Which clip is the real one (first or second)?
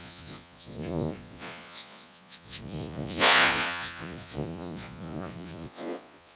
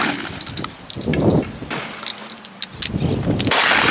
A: second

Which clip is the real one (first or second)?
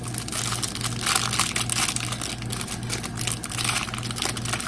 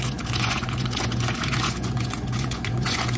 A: first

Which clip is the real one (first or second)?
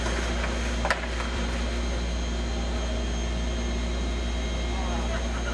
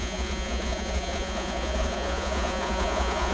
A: first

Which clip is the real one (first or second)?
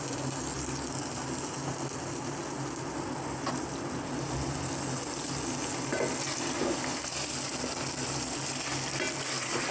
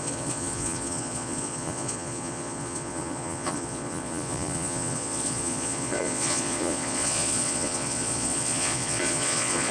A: first